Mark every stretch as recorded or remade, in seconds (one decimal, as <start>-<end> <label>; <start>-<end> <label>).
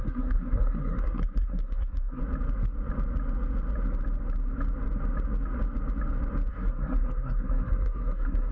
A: 0.0-2.2 remade; 2.2-6.5 recorded; 6.5-8.5 remade